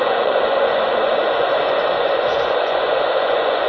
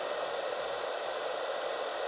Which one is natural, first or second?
second